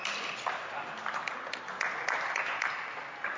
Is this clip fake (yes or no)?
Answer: no